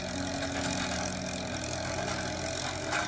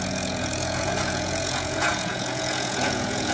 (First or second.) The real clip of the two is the first